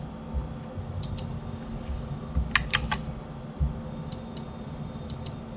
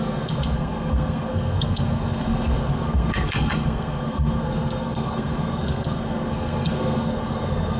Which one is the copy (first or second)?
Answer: second